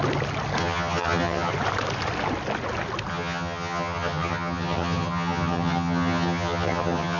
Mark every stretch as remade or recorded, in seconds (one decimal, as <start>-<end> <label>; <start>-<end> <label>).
0.0-0.6 recorded; 0.6-1.5 remade; 1.5-3.1 recorded; 3.1-7.2 remade